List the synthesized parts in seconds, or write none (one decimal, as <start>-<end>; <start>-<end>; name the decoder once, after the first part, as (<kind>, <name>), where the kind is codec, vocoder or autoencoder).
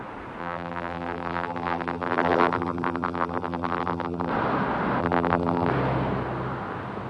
0.4-4.3 (vocoder, BigVGAN v2); 5.0-5.7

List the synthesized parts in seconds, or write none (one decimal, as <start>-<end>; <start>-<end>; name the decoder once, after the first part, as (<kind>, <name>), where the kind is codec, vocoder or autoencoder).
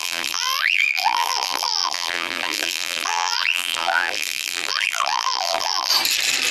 0.0-5.9 (vocoder, BigVGAN v2)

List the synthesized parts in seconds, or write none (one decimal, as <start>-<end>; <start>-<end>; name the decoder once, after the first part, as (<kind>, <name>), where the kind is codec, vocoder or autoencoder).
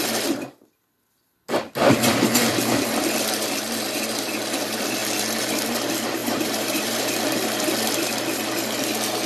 6.2-7.1 (vocoder, BigVGAN v2)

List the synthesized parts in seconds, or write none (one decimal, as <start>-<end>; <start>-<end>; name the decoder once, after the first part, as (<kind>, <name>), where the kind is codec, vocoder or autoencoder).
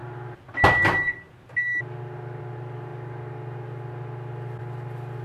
none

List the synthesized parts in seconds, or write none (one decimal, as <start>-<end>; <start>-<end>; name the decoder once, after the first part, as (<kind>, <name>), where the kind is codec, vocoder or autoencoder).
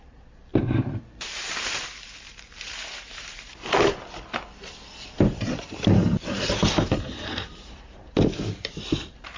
0.0-3.5 (vocoder, BigVGAN v2); 5.3-9.4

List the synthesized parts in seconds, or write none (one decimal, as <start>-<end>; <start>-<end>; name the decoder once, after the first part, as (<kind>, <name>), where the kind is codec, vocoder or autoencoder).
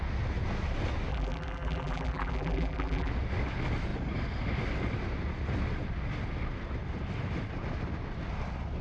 1.1-3.1 (vocoder, BigVGAN v2)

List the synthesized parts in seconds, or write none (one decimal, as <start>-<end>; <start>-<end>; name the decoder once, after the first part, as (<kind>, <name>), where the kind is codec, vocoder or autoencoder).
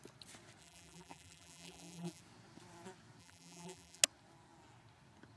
0.6-2.2 (vocoder, BigVGAN v2); 3.2-4.0